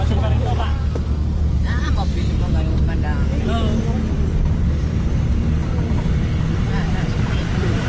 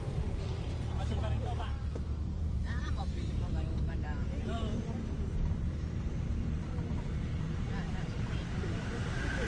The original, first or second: first